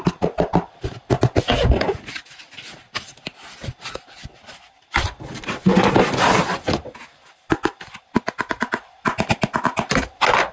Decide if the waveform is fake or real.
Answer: real